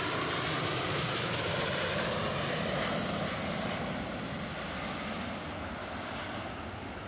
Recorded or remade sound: recorded